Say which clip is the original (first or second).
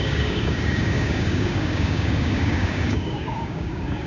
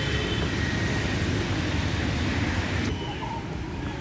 second